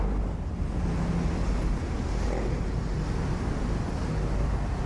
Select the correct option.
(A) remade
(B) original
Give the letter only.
B